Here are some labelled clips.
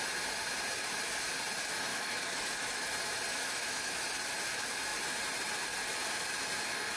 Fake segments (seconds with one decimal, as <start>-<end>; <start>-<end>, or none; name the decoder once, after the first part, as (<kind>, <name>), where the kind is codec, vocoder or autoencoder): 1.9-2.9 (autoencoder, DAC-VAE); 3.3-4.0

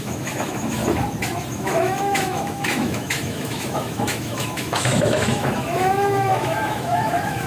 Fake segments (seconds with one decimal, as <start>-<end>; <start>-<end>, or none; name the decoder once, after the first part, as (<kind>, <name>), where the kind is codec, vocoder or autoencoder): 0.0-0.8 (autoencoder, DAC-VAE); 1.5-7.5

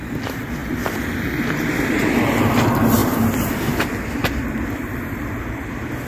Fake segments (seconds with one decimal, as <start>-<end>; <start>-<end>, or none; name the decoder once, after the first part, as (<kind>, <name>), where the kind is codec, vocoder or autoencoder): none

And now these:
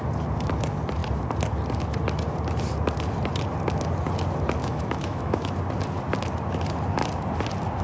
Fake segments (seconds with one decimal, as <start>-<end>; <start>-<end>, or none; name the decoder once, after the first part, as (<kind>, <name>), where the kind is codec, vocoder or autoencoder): 4.6-5.5 (autoencoder, DAC-VAE)